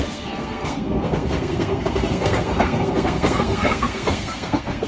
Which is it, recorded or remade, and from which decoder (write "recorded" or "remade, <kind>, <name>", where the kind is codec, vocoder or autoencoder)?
remade, codec, SNAC